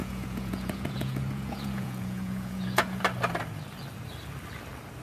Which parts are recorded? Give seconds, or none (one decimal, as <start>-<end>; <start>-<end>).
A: 3.0-5.0